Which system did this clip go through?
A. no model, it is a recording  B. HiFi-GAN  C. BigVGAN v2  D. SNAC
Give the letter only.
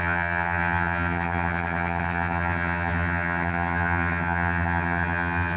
B